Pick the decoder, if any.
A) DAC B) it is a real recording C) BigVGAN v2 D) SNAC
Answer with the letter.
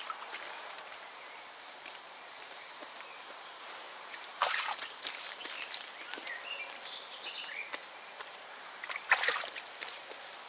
C